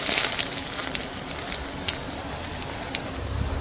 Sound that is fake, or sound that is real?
real